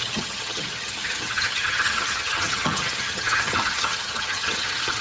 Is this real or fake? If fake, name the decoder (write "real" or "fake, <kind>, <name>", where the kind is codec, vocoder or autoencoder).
fake, vocoder, HiFi-GAN